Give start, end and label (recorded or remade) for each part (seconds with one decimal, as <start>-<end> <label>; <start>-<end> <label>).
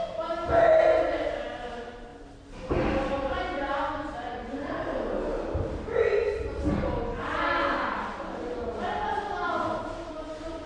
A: 0.0-10.7 recorded